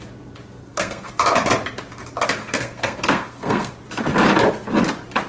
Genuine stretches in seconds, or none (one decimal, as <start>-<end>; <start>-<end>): 0.0-0.6; 1.1-2.4; 3.7-5.3